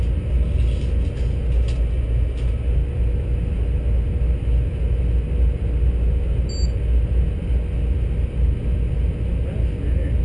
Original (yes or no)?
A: yes